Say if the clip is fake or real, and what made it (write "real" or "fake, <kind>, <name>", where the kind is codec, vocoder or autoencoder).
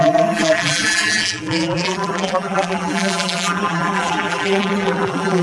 fake, vocoder, BigVGAN v2